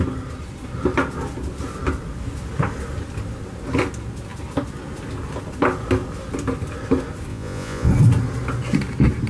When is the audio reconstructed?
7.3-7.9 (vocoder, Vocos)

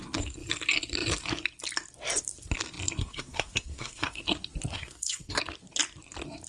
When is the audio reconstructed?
3.0-4.2 (codec, SNAC); 4.7-5.4

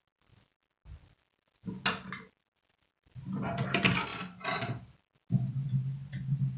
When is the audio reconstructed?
none

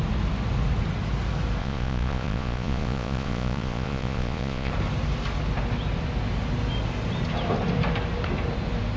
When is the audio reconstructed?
1.6-4.7 (vocoder, Vocos)

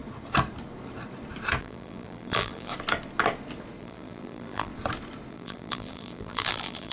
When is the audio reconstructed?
1.6-2.7 (vocoder, BigVGAN v2); 3.8-4.7; 5.3-6.9

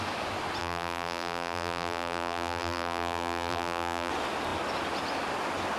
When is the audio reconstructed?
0.6-4.1 (vocoder, BigVGAN v2)

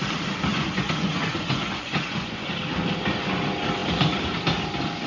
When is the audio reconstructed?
0.5-2.5 (vocoder, Vocos)

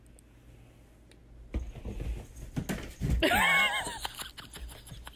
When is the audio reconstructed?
none